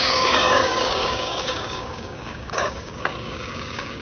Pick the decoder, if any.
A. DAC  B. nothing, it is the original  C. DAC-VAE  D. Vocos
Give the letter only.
A